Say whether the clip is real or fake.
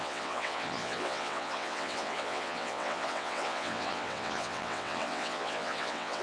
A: fake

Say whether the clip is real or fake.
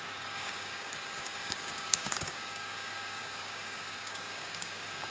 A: fake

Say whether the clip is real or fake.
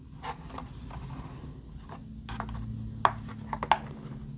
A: real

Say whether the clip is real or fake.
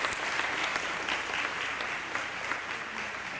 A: real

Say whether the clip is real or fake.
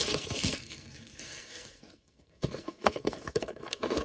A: fake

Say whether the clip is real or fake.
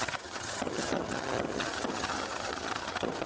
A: fake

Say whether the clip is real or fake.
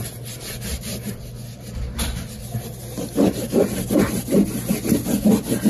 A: real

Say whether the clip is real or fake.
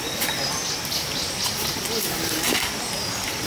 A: real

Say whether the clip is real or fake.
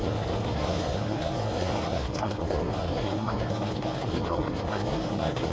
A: fake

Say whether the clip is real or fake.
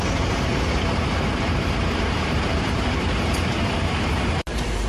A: fake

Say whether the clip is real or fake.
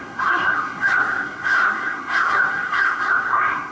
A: fake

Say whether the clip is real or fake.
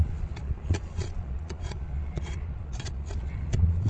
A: fake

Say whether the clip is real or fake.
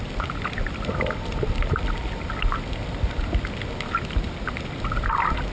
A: real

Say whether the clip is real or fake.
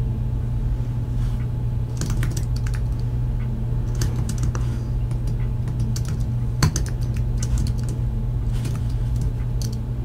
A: real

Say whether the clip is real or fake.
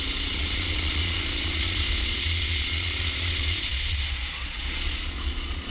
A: fake